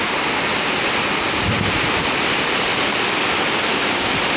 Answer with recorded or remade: recorded